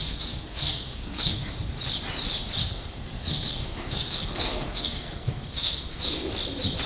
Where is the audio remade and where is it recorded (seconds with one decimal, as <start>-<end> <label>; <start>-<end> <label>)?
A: 0.0-1.5 remade; 1.5-2.6 recorded; 2.6-6.3 remade; 6.3-6.9 recorded